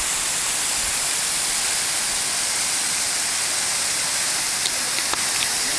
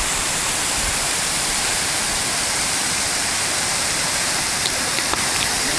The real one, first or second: first